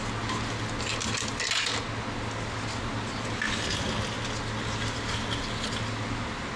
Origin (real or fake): real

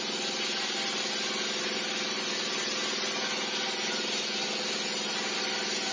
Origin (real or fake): real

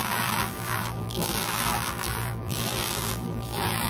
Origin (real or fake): fake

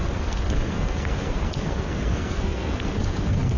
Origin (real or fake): fake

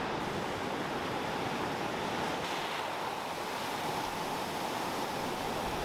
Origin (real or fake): real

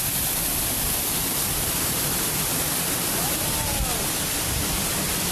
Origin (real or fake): real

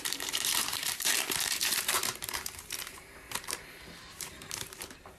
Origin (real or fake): fake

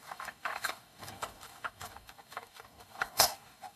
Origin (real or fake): fake